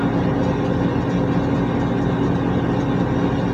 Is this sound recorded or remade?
recorded